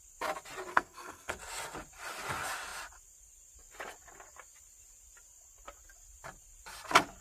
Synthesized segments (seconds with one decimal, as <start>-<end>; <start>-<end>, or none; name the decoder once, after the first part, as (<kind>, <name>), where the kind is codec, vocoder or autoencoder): 0.7-1.3 (codec, SNAC)